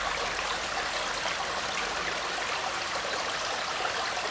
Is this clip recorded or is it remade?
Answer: recorded